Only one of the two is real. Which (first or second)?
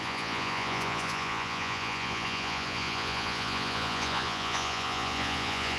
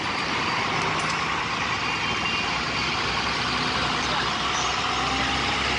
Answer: second